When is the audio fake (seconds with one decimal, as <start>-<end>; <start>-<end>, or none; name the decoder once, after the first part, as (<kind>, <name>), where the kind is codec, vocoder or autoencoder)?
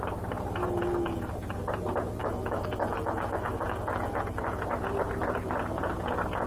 0.6-1.3 (autoencoder, DAC-VAE); 2.2-4.6